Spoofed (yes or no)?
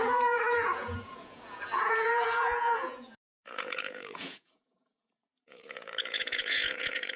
yes